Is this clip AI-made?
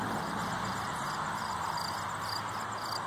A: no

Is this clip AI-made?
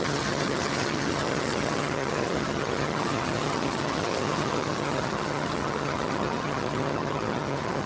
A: yes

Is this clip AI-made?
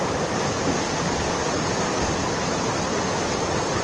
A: no